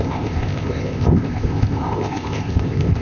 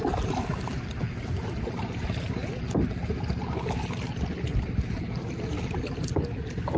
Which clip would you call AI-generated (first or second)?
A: first